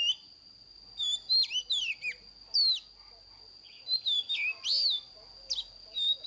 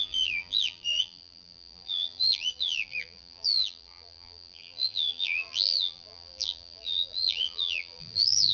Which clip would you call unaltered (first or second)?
first